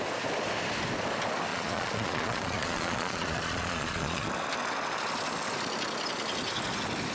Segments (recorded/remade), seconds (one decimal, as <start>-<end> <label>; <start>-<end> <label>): 0.0-1.5 recorded; 1.5-4.3 remade; 4.3-7.1 recorded